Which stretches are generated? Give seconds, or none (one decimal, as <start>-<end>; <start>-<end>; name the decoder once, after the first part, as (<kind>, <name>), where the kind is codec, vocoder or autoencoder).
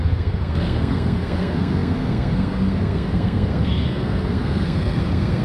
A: 0.0-5.4 (codec, SNAC)